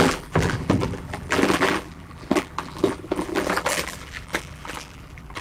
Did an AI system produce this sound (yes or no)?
yes